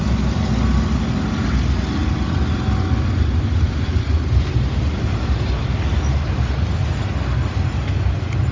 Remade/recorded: recorded